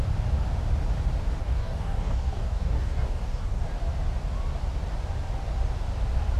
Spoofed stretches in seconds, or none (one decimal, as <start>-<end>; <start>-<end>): 1.4-3.6

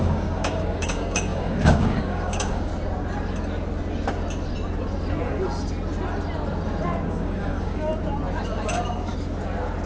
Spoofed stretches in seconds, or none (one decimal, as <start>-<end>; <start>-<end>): 0.0-2.7; 7.1-7.9